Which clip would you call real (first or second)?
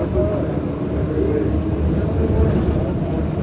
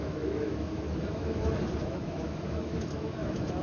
first